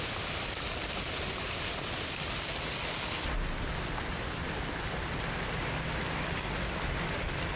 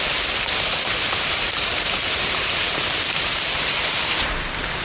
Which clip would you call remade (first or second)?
second